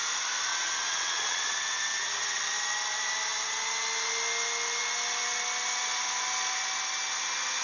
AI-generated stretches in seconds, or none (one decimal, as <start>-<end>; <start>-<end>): 0.5-2.4